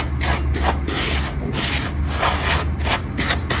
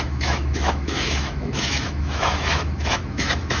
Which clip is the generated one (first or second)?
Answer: second